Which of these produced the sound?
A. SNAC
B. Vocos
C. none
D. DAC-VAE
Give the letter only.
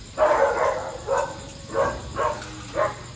C